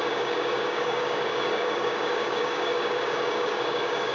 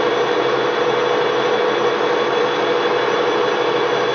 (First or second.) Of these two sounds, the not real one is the first